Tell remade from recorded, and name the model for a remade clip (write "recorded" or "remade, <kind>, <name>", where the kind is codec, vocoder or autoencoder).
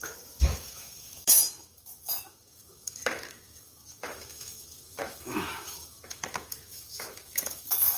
remade, autoencoder, DAC-VAE